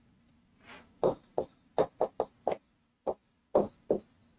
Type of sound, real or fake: real